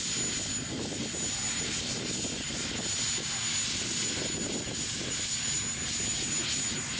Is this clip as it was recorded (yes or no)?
yes